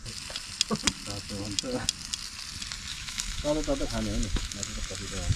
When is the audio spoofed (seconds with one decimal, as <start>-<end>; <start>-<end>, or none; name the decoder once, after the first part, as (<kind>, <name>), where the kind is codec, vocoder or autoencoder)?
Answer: 2.9-5.4 (autoencoder, DAC-VAE)